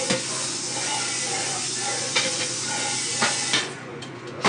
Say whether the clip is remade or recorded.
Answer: remade